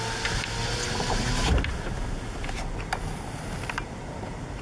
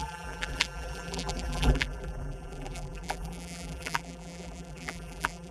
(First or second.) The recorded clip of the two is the first